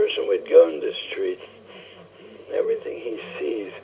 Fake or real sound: real